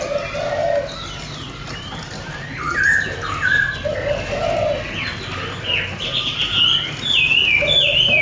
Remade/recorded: recorded